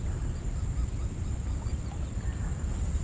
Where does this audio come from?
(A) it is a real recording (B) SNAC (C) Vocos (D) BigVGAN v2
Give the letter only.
D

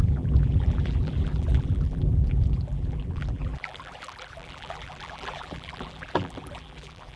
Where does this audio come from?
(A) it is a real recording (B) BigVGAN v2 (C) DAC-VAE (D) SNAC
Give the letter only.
B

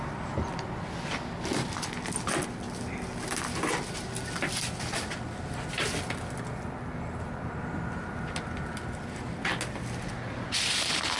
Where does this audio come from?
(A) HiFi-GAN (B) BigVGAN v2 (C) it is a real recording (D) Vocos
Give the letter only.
C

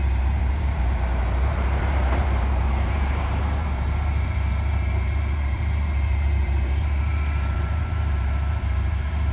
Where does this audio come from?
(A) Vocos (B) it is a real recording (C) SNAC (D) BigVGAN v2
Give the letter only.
D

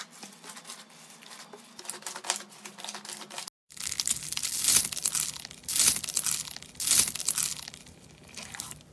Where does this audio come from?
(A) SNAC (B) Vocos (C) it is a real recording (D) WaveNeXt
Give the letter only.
C